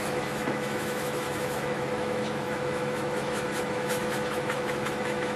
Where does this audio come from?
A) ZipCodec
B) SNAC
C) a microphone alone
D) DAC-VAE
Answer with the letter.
D